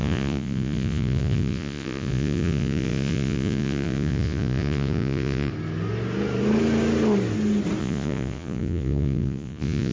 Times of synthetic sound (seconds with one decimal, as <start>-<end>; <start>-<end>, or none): 0.0-5.5; 7.8-9.9